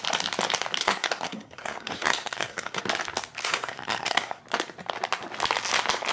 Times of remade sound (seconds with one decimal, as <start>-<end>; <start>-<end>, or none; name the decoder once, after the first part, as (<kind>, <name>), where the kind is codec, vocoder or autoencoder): 0.8-2.8 (codec, SNAC); 3.4-4.4